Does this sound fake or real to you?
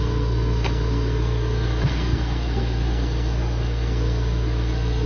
fake